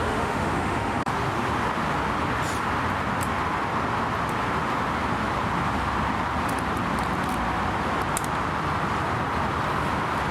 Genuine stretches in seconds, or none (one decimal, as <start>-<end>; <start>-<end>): 1.1-10.3